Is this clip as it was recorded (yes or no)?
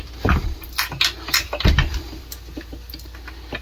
yes